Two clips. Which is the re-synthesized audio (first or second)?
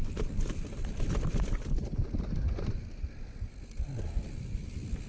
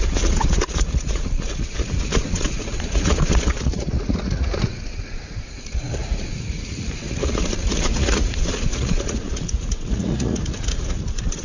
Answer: second